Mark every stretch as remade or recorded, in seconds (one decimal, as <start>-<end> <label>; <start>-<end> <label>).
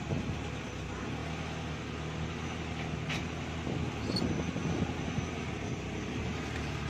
0.0-6.9 recorded